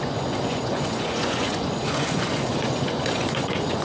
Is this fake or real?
fake